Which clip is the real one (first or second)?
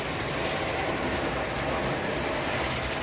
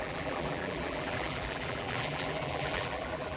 first